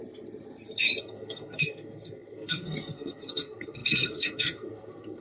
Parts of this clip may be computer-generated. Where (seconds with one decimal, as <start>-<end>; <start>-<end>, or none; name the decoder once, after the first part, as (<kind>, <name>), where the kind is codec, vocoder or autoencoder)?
1.0-5.2 (codec, SNAC)